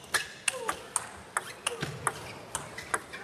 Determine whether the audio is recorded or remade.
recorded